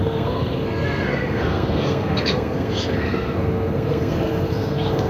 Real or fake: fake